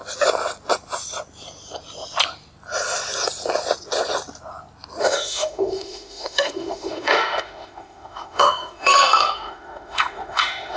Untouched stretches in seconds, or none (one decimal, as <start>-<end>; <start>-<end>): 0.0-5.0